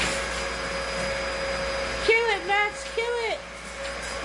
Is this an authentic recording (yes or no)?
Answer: yes